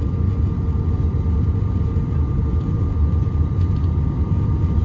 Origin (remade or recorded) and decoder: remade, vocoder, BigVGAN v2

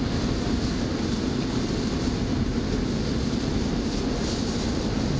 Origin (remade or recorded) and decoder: recorded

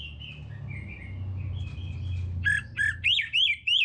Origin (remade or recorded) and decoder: recorded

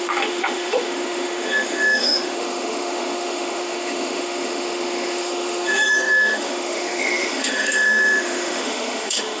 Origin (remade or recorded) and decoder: remade, autoencoder, DAC-VAE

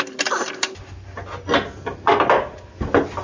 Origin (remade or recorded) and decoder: recorded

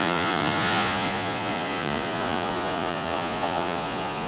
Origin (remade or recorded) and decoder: remade, vocoder, Vocos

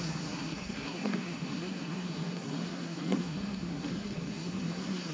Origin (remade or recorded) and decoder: remade, codec, SNAC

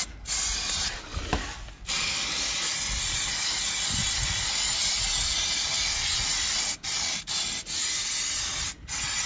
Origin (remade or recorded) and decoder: recorded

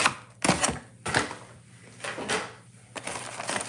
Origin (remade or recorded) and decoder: recorded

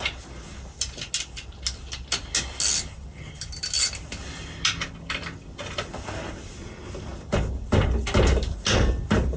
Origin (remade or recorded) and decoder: recorded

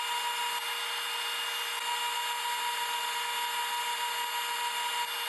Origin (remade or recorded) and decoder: recorded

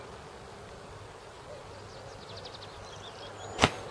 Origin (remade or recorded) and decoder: recorded